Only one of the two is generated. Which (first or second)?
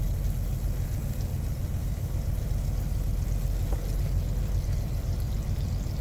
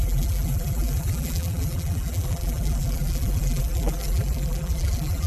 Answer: second